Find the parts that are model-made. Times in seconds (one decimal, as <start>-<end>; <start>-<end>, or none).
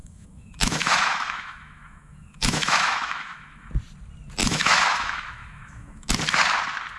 0.0-3.7; 4.4-6.1